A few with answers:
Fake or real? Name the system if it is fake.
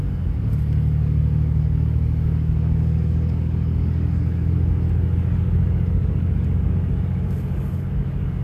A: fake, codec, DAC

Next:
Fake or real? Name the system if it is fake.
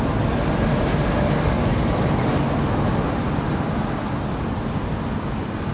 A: real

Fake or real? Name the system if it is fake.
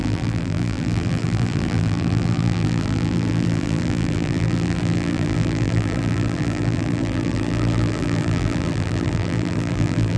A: fake, vocoder, BigVGAN v2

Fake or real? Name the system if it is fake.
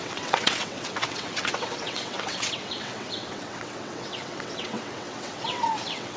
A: fake, vocoder, WaveNeXt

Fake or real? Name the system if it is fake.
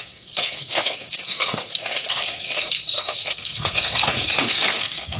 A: fake, codec, SNAC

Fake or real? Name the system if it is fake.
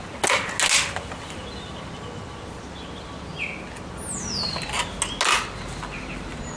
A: real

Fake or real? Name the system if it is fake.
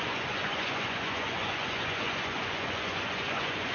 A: fake, vocoder, Vocos